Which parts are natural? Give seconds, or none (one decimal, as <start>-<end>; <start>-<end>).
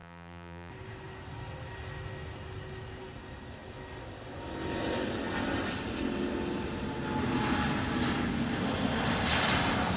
0.7-10.0